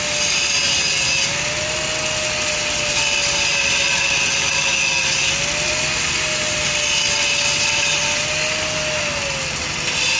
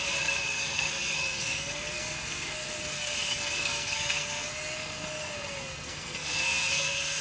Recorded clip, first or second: first